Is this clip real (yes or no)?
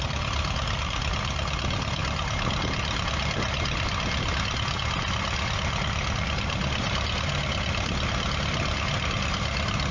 yes